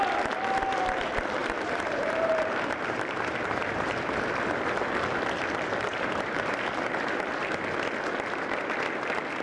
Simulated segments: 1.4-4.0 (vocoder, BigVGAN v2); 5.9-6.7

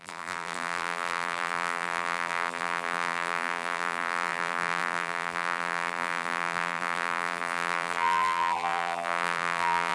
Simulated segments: 0.0-9.9 (vocoder, BigVGAN v2)

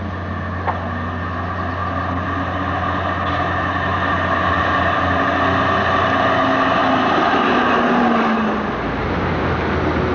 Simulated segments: none

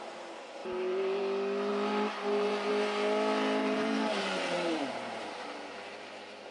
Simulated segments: 0.6-1.2 (vocoder, BigVGAN v2); 1.7-2.7; 3.6-5.2

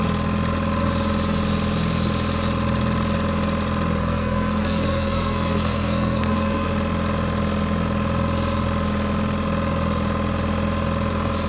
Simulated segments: 4.0-6.7 (codec, SNAC)

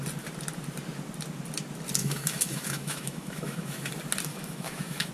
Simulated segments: 2.0-3.9 (autoencoder, DAC-VAE); 4.3-5.1